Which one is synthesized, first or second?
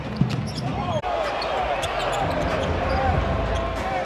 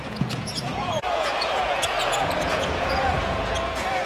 second